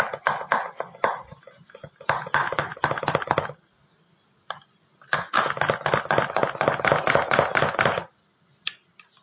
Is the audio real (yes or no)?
yes